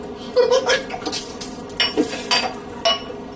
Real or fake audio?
real